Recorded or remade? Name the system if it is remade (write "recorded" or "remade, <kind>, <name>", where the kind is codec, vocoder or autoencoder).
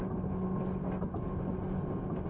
recorded